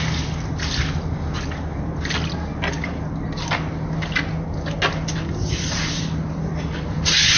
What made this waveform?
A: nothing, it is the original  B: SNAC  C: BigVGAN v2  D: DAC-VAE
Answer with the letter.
A